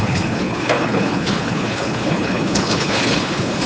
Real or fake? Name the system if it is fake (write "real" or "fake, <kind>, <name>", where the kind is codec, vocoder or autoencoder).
fake, codec, HILCodec